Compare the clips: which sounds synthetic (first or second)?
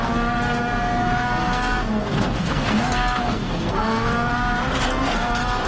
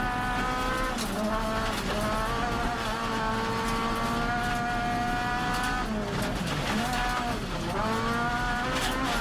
first